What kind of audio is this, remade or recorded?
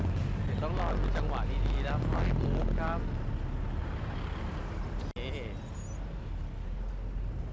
recorded